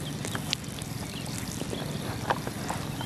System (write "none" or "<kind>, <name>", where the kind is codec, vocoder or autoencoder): none